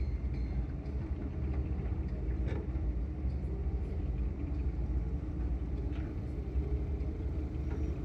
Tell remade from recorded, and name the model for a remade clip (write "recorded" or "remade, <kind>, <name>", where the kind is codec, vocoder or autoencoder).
remade, vocoder, BigVGAN v2